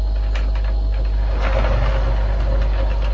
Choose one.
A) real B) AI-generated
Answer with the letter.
A